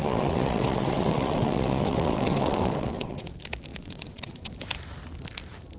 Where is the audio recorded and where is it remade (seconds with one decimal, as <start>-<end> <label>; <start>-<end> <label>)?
0.0-3.3 remade; 3.3-3.7 recorded; 3.7-4.5 remade; 4.5-5.8 recorded

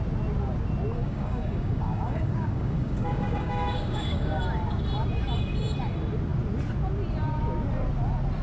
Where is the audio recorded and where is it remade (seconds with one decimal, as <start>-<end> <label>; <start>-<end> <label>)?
0.0-0.9 recorded; 0.9-4.4 remade; 4.4-8.4 recorded

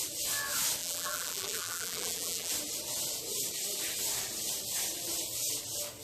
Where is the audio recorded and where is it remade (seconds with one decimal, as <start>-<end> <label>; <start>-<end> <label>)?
0.0-0.8 recorded; 0.8-2.5 remade; 2.5-6.0 recorded